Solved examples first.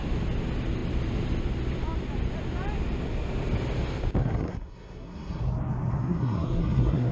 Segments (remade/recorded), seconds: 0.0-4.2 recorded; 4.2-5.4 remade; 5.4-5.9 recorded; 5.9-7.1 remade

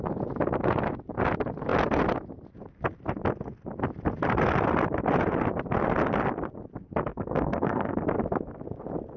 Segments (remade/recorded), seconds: 0.0-7.1 recorded; 7.1-8.0 remade; 8.0-9.2 recorded

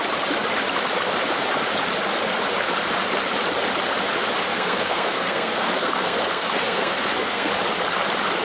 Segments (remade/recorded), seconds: 0.0-4.5 recorded; 4.5-7.5 remade; 7.5-8.4 recorded

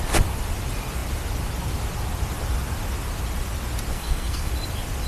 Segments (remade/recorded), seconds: 0.0-3.9 recorded; 3.9-4.5 remade; 4.5-5.1 recorded

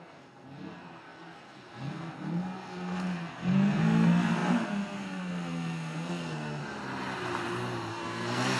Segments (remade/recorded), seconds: 0.0-6.6 remade; 6.6-7.9 recorded; 7.9-8.6 remade

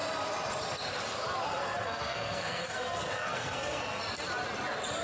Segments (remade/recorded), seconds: 0.0-1.5 recorded; 1.5-4.0 remade; 4.0-5.0 recorded

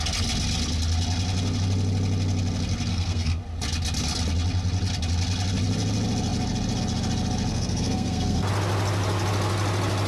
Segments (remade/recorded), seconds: 0.0-2.9 recorded; 2.9-3.4 remade; 3.4-7.5 recorded; 7.5-8.5 remade; 8.5-10.1 recorded